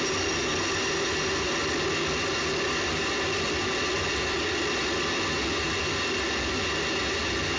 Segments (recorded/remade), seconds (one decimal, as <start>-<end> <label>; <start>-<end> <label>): 0.0-7.6 recorded